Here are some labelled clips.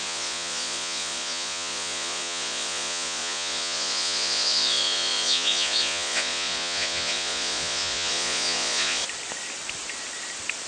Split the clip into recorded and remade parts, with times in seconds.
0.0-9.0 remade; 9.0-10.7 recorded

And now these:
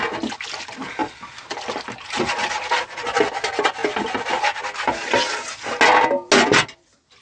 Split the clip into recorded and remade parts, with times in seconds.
0.0-7.2 recorded

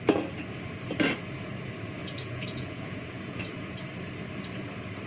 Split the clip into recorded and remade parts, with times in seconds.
0.0-2.0 recorded; 2.0-3.4 remade; 3.4-5.1 recorded

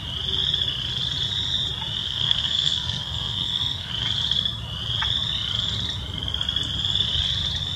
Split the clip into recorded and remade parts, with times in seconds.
0.0-2.0 recorded; 2.0-3.9 remade; 3.9-7.8 recorded

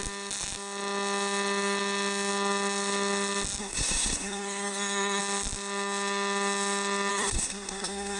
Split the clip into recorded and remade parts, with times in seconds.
0.0-3.6 recorded; 3.6-5.2 remade; 5.2-7.1 recorded; 7.1-8.2 remade

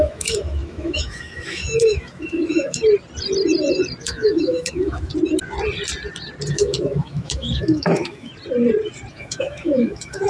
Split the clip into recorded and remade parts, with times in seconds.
0.0-2.8 remade; 2.8-4.0 recorded; 4.0-5.1 remade; 5.1-6.5 recorded; 6.5-8.3 remade; 8.3-9.1 recorded; 9.1-10.3 remade

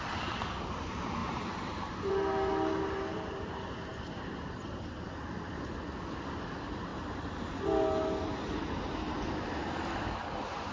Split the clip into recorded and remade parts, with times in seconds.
0.0-1.2 recorded; 1.2-2.5 remade; 2.5-3.9 recorded; 3.9-4.7 remade; 4.7-10.7 recorded